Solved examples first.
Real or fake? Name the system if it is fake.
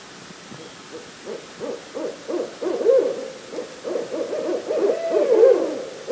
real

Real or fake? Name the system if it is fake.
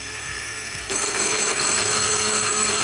fake, codec, SNAC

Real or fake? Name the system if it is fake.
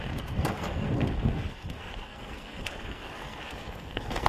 fake, codec, SNAC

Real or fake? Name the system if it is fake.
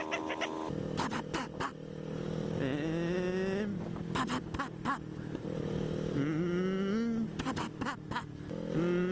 real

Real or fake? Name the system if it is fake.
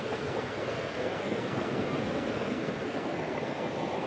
fake, codec, SNAC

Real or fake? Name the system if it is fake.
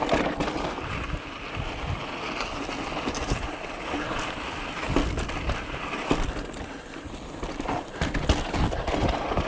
real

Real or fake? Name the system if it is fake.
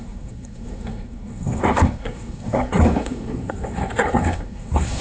fake, codec, SNAC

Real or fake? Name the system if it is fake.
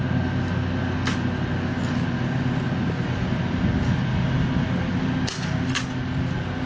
real